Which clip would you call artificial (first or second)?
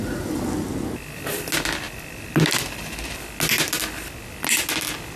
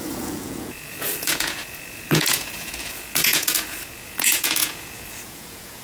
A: second